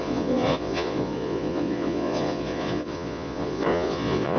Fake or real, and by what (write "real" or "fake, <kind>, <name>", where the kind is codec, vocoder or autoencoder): fake, vocoder, Vocos